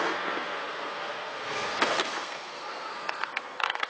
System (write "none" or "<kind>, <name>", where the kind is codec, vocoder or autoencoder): codec, SNAC